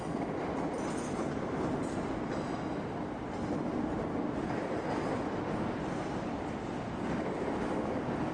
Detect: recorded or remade recorded